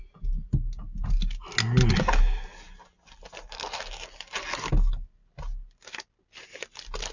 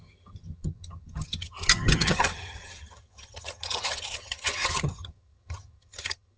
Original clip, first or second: first